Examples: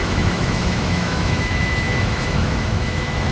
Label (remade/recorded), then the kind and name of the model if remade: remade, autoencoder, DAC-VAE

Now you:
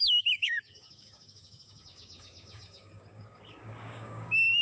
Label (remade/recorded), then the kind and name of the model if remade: remade, codec, DAC